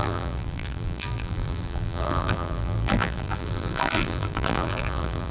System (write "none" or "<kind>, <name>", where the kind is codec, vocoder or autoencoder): vocoder, BigVGAN v2